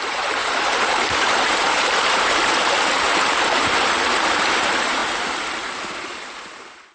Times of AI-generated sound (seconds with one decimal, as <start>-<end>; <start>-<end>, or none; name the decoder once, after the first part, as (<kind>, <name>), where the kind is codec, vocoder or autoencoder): 0.0-5.0 (vocoder, BigVGAN v2); 5.8-6.9